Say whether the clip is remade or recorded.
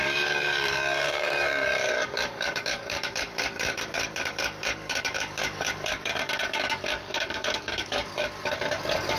remade